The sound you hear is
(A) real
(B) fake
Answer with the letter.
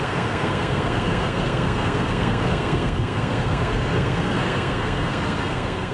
B